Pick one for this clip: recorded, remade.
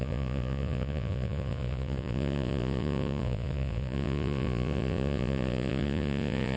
remade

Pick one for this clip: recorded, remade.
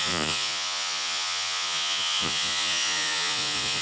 remade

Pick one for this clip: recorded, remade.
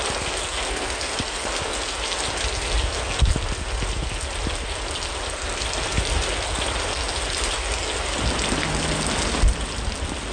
recorded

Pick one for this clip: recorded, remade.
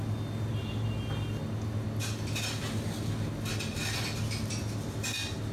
recorded